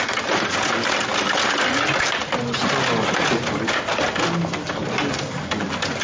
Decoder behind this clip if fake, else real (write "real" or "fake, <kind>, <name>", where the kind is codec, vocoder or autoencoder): real